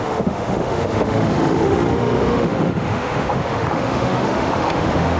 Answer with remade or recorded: remade